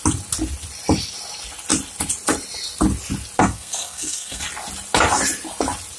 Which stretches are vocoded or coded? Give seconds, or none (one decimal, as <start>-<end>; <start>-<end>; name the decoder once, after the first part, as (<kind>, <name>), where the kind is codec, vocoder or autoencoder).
3.4-4.4 (codec, SNAC)